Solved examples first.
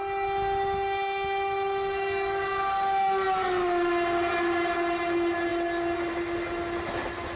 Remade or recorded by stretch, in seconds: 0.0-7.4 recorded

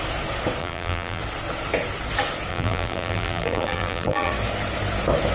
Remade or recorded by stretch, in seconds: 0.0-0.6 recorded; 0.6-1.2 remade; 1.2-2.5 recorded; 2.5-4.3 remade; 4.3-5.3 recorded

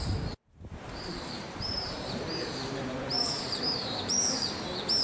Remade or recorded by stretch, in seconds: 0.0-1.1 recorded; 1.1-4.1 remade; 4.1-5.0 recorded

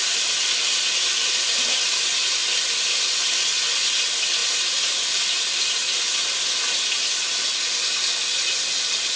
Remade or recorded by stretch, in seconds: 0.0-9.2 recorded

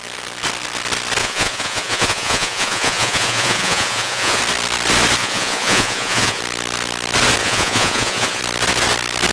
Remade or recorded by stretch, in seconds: 0.0-1.2 recorded; 1.2-4.4 remade; 4.4-5.2 recorded; 5.2-6.4 remade; 6.4-7.4 recorded; 7.4-8.4 remade; 8.4-9.3 recorded

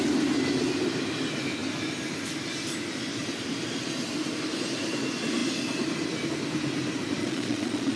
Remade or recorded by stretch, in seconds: 0.0-7.2 recorded; 7.2-8.0 remade

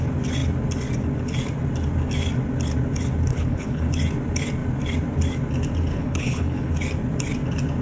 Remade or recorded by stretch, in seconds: 0.0-3.3 recorded; 3.3-3.9 remade; 3.9-5.9 recorded; 5.9-6.7 remade; 6.7-7.8 recorded

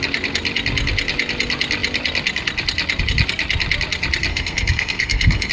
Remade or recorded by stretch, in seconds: 0.0-4.3 recorded; 4.3-5.5 remade